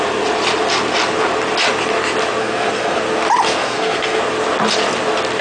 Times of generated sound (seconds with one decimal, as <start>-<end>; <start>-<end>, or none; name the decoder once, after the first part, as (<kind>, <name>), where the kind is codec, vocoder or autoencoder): 2.4-3.0 (codec, SNAC); 3.6-4.2